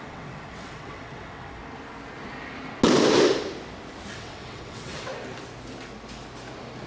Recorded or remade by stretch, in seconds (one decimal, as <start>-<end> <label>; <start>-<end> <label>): 0.0-1.6 remade; 1.6-4.1 recorded; 4.1-5.1 remade; 5.1-6.9 recorded